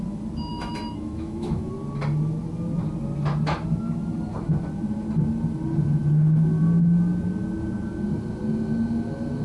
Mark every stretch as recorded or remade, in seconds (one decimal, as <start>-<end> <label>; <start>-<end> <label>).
0.0-0.5 recorded; 0.5-1.7 remade; 1.7-9.4 recorded